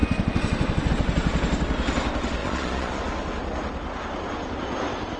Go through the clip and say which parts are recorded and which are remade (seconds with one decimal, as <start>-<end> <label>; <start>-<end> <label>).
0.0-2.4 recorded; 2.4-3.0 remade; 3.0-5.2 recorded